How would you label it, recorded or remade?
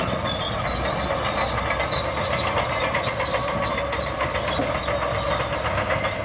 recorded